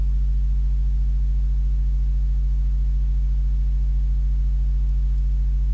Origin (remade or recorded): recorded